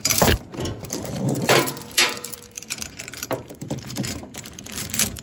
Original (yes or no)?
no